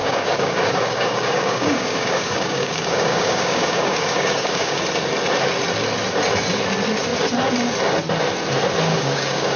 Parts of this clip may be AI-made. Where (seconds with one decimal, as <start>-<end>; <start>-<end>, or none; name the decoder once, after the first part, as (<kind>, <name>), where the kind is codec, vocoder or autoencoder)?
0.0-4.8 (codec, DAC); 8.9-9.6